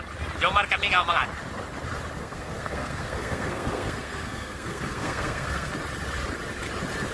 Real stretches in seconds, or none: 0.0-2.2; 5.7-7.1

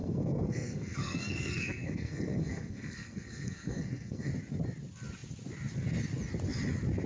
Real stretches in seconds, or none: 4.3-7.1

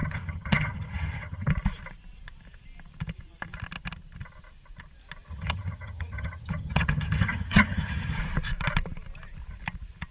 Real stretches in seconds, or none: 1.5-5.3; 8.2-10.1

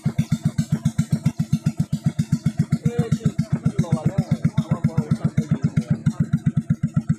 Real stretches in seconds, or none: 0.0-1.3; 4.1-7.2

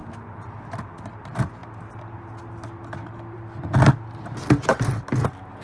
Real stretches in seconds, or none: 0.0-5.6

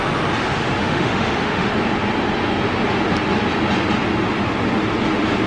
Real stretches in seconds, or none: 0.0-0.8; 1.7-5.5